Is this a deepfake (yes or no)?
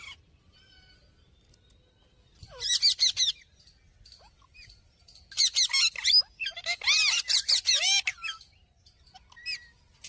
no